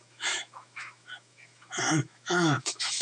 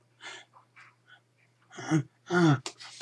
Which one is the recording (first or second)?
second